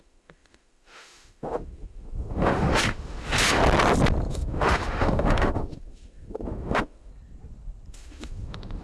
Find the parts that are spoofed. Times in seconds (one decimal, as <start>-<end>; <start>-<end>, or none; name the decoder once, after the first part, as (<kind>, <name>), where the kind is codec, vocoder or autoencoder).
0.0-3.6 (autoencoder, DAC-VAE); 4.3-7.1; 7.9-8.8